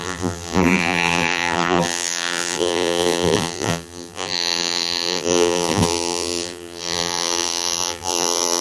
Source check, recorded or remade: remade